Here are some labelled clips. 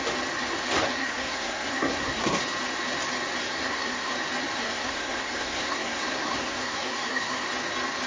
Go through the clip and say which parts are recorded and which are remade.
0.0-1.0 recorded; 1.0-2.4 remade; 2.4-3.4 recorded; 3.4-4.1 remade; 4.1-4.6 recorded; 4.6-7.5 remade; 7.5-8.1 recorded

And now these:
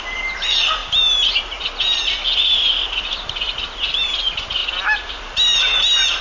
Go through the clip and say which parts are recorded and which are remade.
0.0-6.2 recorded

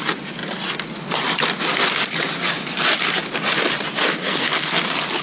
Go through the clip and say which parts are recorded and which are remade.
0.0-4.2 recorded; 4.2-4.8 remade; 4.8-5.2 recorded

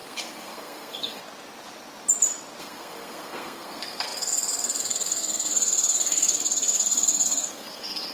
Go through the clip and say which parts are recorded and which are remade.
0.0-1.2 remade; 1.2-2.6 recorded; 2.6-8.1 remade

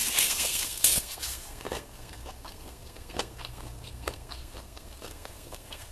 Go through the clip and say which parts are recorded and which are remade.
0.0-5.9 remade